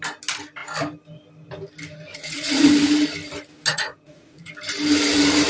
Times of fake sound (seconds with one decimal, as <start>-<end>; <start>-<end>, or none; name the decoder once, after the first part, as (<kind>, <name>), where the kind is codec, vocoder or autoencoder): 2.1-2.7 (vocoder, Vocos); 3.7-4.5